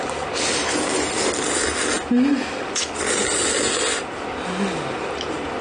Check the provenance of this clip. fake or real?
real